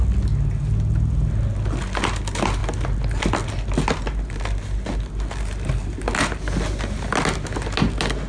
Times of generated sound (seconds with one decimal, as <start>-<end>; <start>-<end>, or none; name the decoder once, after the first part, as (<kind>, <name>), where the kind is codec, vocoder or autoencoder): none